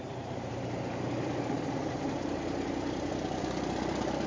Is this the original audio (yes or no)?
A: no